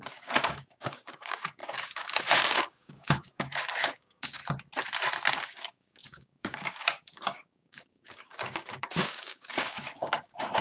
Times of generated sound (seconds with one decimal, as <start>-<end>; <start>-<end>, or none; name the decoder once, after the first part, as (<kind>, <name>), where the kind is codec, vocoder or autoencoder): 0.0-4.4 (codec, DAC); 5.3-10.6